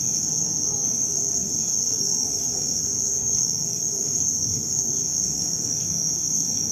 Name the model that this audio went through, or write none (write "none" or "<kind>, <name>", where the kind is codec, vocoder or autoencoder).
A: codec, SNAC